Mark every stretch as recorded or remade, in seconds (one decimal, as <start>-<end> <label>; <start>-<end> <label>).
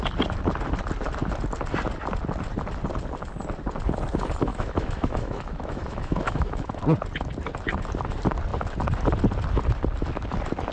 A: 0.0-4.5 recorded; 4.5-6.8 remade; 6.8-10.7 recorded